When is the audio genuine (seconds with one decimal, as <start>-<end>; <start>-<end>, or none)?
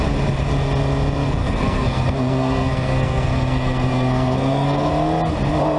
0.0-1.4; 4.9-5.8